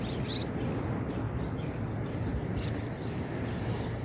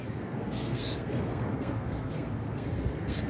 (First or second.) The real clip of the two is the first